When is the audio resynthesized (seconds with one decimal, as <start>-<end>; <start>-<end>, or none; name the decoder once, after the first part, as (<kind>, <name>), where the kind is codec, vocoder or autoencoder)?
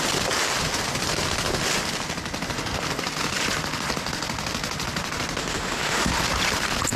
5.4-6.1 (autoencoder, DAC-VAE)